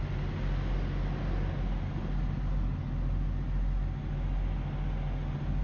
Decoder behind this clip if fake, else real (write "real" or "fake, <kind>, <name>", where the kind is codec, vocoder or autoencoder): real